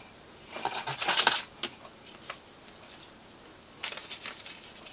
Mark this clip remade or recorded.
recorded